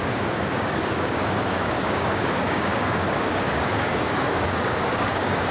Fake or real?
fake